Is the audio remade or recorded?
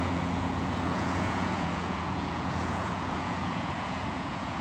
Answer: remade